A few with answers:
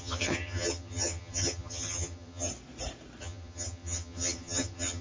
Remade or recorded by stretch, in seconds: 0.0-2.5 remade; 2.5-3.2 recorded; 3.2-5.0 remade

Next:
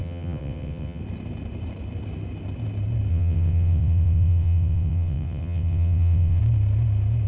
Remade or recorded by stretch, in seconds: 0.0-1.0 remade; 1.0-3.1 recorded; 3.1-6.4 remade; 6.4-7.3 recorded

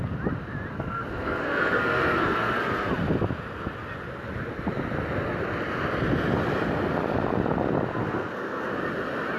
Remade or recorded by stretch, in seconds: 0.0-0.7 recorded; 0.7-2.9 remade; 2.9-8.0 recorded; 8.0-8.8 remade; 8.8-9.4 recorded

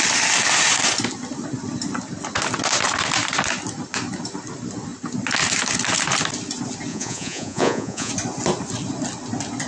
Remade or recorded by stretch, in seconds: 0.0-6.9 recorded; 6.9-8.1 remade; 8.1-9.7 recorded